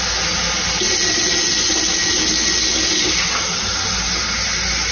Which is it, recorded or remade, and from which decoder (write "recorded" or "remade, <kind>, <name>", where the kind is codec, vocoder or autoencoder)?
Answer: recorded